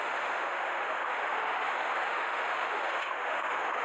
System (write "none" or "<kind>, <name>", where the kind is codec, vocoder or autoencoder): autoencoder, DAC-VAE